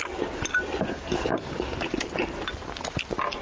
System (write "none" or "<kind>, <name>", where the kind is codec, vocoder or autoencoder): none